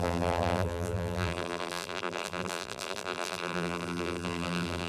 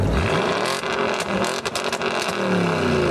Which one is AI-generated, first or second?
first